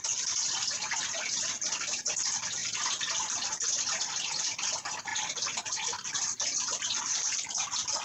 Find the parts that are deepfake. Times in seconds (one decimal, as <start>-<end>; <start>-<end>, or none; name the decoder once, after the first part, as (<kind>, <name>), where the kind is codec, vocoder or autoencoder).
none